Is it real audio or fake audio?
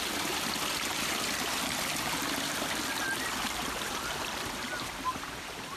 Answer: real